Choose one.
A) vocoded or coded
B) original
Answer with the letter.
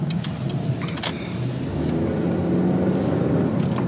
B